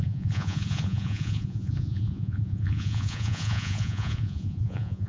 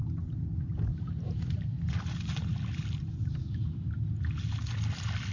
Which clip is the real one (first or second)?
second